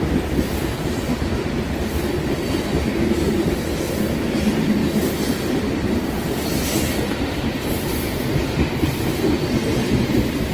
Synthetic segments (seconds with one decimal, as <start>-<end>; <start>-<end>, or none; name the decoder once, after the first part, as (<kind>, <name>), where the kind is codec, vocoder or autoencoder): none